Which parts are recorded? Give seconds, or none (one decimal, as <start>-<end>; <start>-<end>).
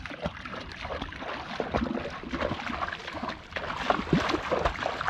0.0-5.1